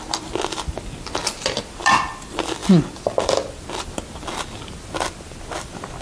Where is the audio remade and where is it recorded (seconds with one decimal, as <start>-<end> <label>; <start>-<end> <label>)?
0.0-6.0 recorded